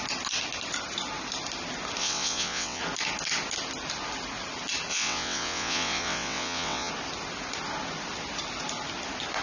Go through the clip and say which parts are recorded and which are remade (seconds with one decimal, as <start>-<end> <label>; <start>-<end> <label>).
0.0-2.0 recorded; 2.0-2.8 remade; 2.8-4.9 recorded; 4.9-6.9 remade; 6.9-9.4 recorded